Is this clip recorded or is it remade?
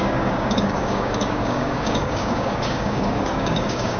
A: remade